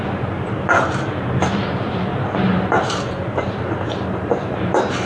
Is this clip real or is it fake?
fake